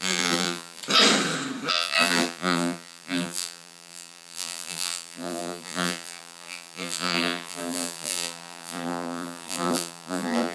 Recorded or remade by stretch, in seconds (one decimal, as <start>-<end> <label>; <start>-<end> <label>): 0.0-0.8 remade; 0.8-1.7 recorded; 1.7-10.5 remade